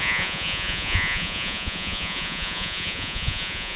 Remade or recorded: remade